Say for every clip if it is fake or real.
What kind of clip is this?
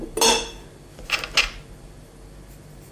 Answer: real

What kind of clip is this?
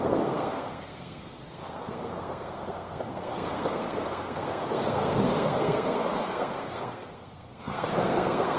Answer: fake